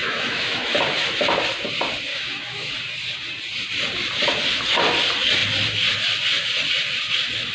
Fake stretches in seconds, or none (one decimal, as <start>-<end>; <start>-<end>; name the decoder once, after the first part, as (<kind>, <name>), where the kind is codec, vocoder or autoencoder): 0.0-0.8 (autoencoder, DAC-VAE); 2.1-2.7